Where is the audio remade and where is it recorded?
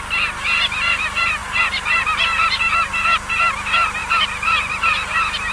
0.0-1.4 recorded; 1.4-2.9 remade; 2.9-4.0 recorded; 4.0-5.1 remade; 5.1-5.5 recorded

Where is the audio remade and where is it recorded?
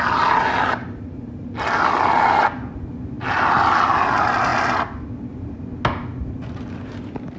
0.0-7.4 recorded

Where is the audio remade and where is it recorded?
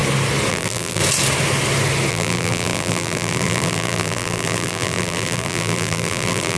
0.0-0.5 recorded; 0.5-1.0 remade; 1.0-2.1 recorded; 2.1-6.6 remade